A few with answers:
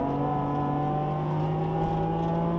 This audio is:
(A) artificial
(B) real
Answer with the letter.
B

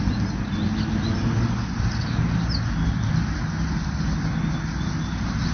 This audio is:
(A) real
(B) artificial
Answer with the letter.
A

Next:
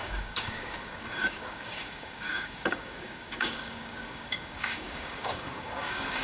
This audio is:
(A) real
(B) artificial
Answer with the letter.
B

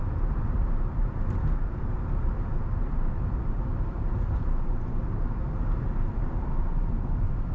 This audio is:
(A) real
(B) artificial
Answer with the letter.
B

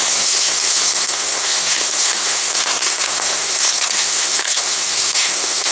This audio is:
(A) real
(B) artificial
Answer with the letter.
B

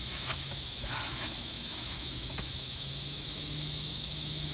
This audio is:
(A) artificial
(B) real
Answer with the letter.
A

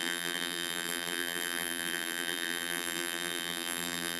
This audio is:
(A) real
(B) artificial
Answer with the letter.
B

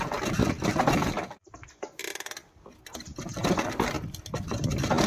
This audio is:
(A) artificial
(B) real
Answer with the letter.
B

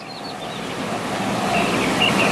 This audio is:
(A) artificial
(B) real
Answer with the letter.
B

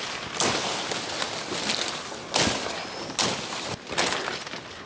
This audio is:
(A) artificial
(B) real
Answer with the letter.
B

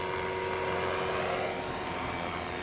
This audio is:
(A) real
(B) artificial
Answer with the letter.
A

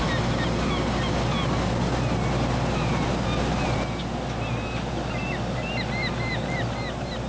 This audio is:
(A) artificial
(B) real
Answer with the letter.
B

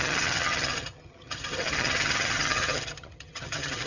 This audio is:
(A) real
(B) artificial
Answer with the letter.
B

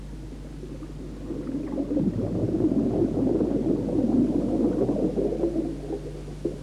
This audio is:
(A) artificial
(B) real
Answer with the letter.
B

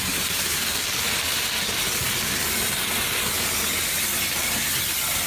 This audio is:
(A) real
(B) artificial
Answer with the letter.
A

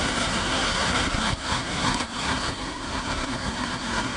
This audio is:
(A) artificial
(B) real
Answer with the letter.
A